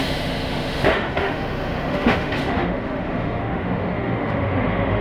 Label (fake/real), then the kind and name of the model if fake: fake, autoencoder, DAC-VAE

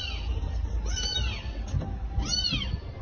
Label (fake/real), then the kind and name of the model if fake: real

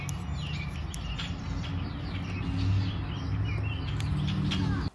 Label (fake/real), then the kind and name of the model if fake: real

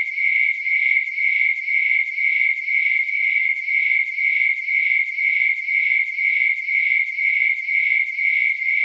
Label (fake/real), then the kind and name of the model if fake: real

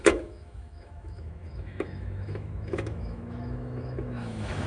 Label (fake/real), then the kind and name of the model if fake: fake, autoencoder, DAC-VAE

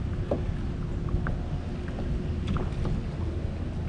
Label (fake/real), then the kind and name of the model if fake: real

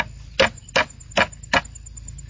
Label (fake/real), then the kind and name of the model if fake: real